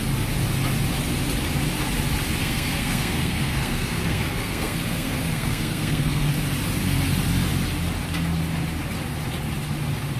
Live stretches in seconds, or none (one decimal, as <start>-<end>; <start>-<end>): 0.0-2.4; 6.3-10.2